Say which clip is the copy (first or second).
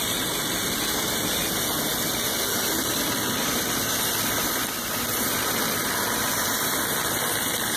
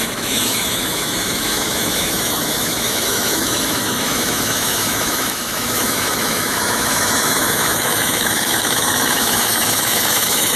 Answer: second